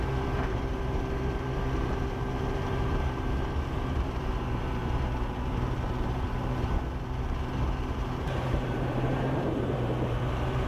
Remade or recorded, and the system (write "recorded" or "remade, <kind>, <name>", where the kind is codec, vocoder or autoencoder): remade, vocoder, BigVGAN v2